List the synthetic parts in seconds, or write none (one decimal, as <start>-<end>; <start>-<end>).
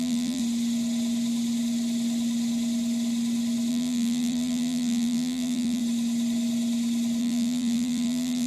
0.0-0.4; 3.7-5.8; 7.2-8.5